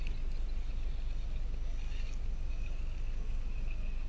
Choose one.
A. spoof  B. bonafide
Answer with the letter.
B